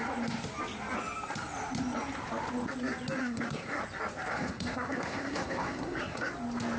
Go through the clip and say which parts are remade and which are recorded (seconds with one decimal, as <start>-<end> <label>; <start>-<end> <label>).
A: 0.0-3.2 recorded; 3.2-3.8 remade; 3.8-4.3 recorded; 4.3-6.3 remade; 6.3-6.8 recorded